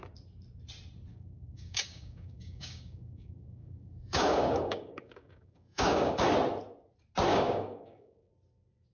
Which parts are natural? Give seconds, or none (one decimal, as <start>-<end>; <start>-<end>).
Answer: 0.0-1.1; 6.2-7.3; 8.3-8.9